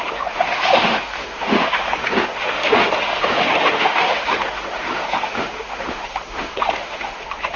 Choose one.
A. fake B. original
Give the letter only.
A